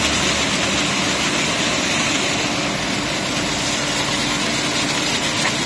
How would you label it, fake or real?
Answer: real